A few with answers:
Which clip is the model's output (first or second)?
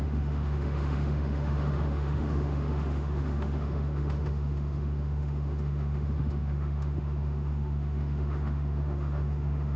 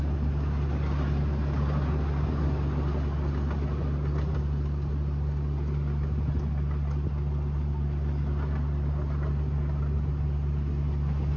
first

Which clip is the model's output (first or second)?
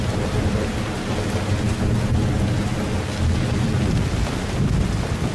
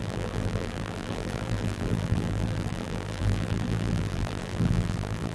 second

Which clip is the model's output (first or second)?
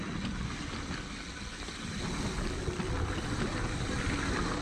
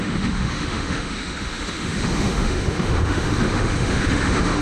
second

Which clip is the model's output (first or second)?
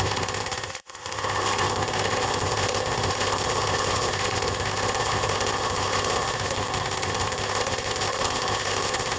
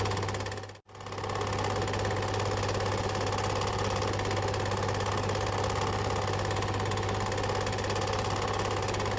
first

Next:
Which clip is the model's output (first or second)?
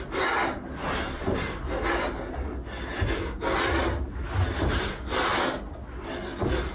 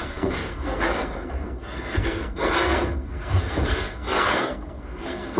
second